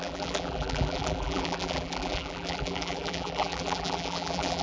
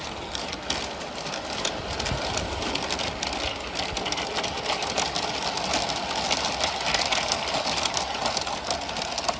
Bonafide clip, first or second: second